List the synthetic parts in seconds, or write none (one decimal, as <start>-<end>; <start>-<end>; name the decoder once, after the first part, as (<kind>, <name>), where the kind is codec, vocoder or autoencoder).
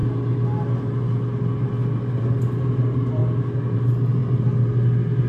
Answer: 2.4-3.2 (vocoder, BigVGAN v2); 3.7-4.2